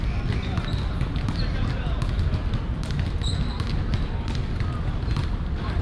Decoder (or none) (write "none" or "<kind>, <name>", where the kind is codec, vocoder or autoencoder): none